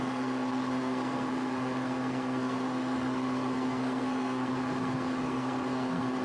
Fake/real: fake